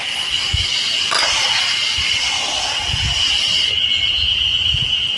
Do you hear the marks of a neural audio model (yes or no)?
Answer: no